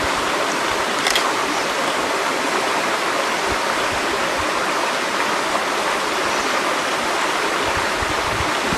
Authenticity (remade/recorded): recorded